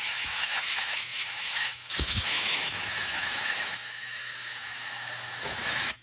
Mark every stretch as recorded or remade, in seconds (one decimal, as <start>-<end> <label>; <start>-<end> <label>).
0.0-6.0 remade